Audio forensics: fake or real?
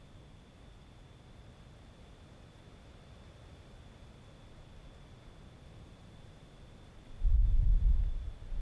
real